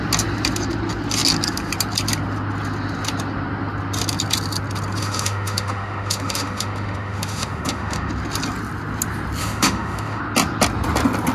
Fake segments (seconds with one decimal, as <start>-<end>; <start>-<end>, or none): 5.0-8.1; 9.4-10.2